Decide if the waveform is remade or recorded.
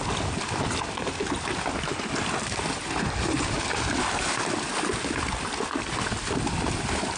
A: recorded